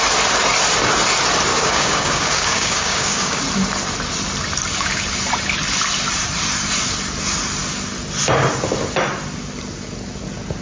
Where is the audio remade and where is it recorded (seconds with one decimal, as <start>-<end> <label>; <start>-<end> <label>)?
0.0-1.5 recorded; 1.5-3.4 remade; 3.4-10.6 recorded